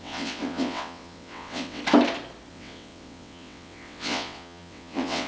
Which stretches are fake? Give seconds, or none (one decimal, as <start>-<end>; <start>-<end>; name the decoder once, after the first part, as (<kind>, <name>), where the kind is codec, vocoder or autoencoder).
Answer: 0.0-1.8 (vocoder, WaveNeXt); 2.5-5.3